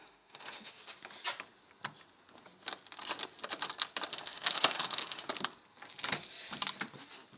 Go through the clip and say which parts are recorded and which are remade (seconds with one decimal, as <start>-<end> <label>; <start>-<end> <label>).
0.0-0.7 remade; 0.7-4.1 recorded; 4.1-5.3 remade; 5.3-7.4 recorded